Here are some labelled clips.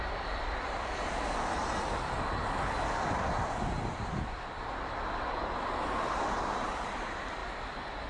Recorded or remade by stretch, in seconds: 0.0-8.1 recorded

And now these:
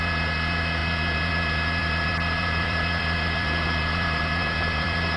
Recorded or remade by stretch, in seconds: 0.0-1.8 recorded; 1.8-5.2 remade

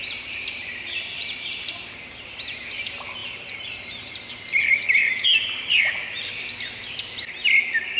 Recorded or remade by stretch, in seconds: 0.0-6.3 remade; 6.3-7.6 recorded; 7.6-8.0 remade

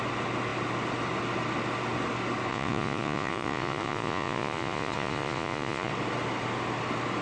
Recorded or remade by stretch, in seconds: 0.0-2.5 recorded; 2.5-5.9 remade; 5.9-7.2 recorded

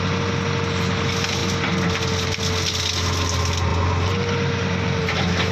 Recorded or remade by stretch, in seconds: 0.0-5.5 recorded

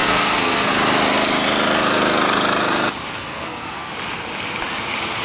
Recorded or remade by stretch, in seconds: 0.0-0.7 remade; 0.7-3.2 recorded; 3.2-3.9 remade; 3.9-5.2 recorded

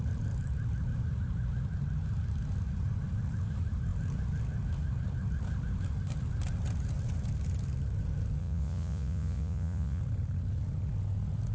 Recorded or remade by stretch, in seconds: 0.0-8.4 recorded; 8.4-10.0 remade; 10.0-11.5 recorded

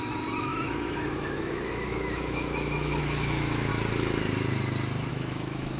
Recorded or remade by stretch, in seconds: 0.0-3.7 remade; 3.7-5.1 recorded; 5.1-5.8 remade